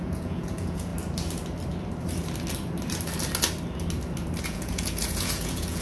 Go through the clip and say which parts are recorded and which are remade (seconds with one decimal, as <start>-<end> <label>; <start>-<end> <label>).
0.0-0.9 remade; 0.9-4.4 recorded; 4.4-5.8 remade